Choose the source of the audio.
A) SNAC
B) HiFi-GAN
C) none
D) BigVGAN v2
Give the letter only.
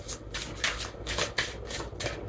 C